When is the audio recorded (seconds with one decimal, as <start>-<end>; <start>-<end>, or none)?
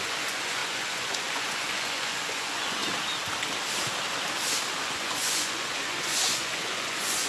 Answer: 2.8-4.8